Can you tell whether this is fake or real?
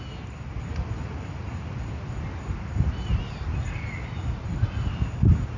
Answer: real